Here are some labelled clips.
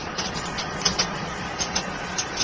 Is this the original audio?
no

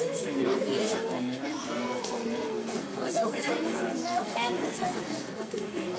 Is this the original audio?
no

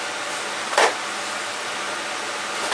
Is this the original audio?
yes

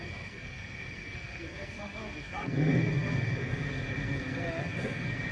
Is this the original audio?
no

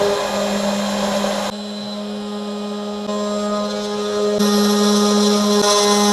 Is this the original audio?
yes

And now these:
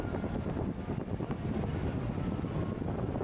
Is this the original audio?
yes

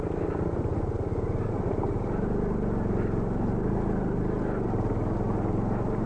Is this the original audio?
yes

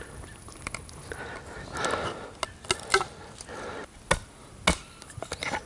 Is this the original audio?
yes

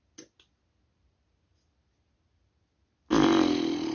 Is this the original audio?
yes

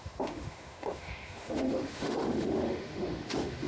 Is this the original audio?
no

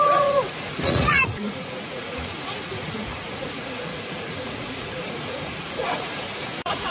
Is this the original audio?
no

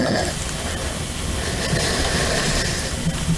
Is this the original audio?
yes